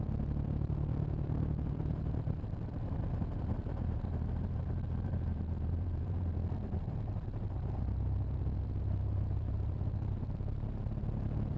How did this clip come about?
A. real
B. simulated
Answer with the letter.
B